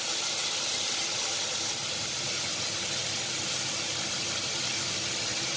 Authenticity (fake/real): real